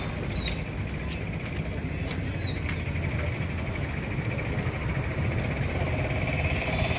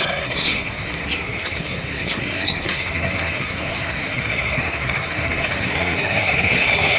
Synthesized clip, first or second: second